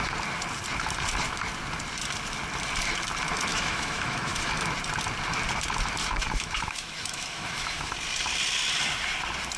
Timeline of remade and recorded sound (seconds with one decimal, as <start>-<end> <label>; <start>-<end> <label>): 0.0-3.5 recorded; 3.5-4.5 remade; 4.5-6.0 recorded; 6.0-7.9 remade; 7.9-9.6 recorded